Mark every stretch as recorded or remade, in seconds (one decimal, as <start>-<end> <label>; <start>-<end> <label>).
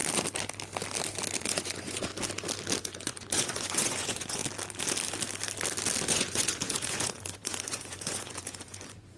0.0-1.4 recorded; 1.4-2.1 remade; 2.1-2.8 recorded; 2.8-4.4 remade; 4.4-6.1 recorded; 6.1-9.2 remade